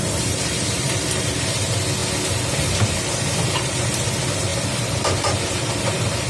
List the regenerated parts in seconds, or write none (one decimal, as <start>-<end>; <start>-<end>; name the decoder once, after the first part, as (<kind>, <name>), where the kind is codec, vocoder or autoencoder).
0.0-2.0 (vocoder, BigVGAN v2); 2.7-6.3